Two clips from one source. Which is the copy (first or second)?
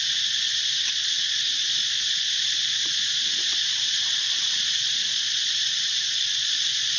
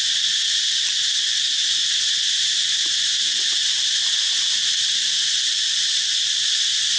first